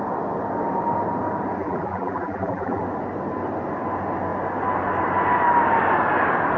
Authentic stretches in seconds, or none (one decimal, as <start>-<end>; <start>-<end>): 0.0-1.6; 2.8-6.6